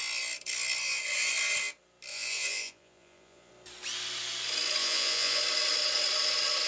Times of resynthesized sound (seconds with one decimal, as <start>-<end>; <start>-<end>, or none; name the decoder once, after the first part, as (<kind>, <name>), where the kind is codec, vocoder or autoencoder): 2.1-3.5 (vocoder, Vocos); 4.8-5.4